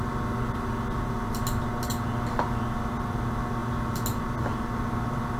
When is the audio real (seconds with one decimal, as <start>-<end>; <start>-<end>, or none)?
0.0-5.4